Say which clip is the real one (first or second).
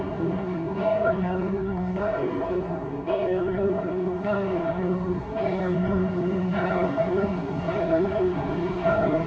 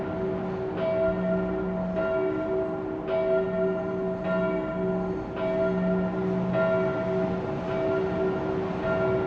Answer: second